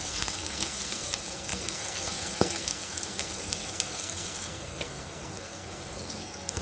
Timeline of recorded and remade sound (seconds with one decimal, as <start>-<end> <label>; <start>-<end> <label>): 0.0-6.6 remade